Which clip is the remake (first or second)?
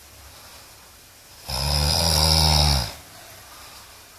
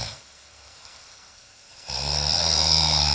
second